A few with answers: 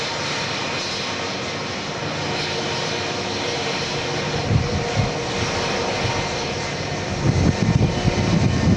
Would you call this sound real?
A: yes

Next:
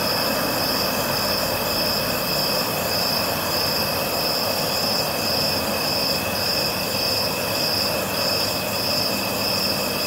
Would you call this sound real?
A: yes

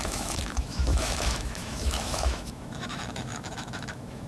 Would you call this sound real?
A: no